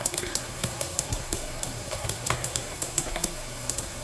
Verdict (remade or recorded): remade